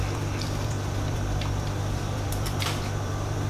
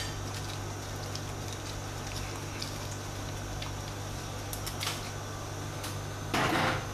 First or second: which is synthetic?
first